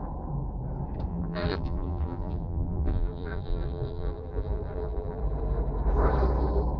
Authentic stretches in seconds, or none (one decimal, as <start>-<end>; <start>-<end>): 0.0-1.1; 5.2-6.8